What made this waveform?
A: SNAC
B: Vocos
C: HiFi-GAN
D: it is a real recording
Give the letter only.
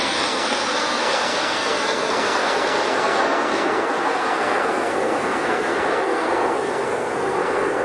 A